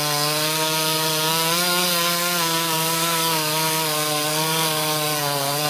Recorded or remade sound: remade